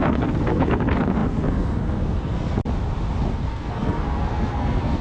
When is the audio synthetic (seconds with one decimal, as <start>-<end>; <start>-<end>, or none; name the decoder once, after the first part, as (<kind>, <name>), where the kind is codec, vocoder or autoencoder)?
0.0-2.6 (codec, SNAC); 3.3-5.0